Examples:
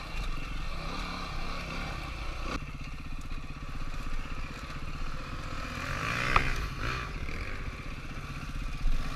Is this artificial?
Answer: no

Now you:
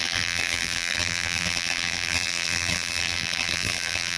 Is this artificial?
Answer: yes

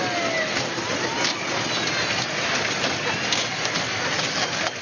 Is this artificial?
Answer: no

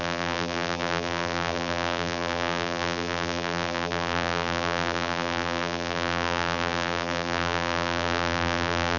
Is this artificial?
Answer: yes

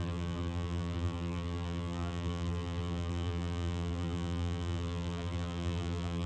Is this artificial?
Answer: yes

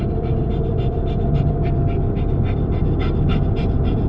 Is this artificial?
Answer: yes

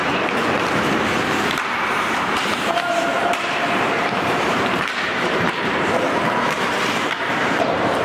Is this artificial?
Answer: yes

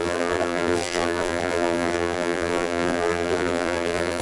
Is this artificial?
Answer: yes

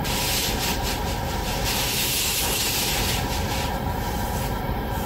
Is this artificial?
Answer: yes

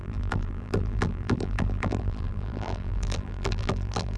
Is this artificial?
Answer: yes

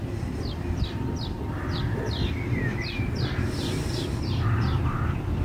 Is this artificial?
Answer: yes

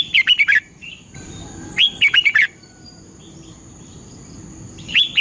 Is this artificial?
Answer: yes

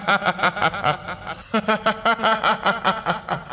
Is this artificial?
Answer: no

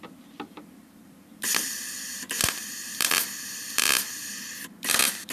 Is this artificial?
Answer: yes